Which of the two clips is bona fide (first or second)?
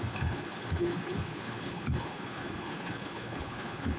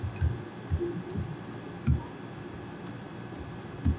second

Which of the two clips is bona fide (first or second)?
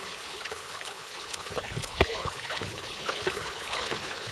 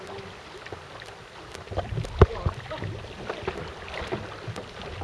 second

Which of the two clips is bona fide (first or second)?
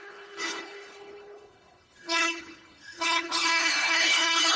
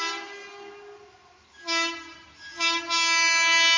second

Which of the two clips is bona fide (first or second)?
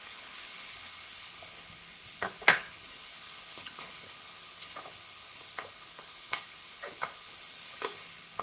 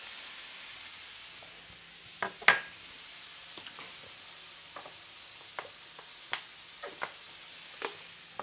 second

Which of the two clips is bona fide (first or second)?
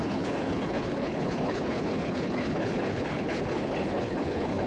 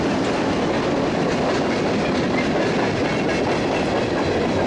second